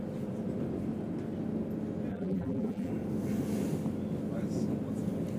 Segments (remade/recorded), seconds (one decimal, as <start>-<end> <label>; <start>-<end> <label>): 0.0-2.1 recorded; 2.1-2.9 remade; 2.9-5.4 recorded